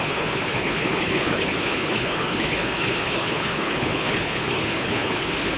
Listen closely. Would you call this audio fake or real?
fake